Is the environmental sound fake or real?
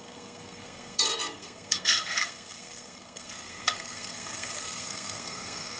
fake